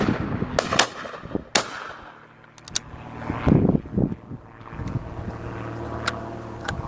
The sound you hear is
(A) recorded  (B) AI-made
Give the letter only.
A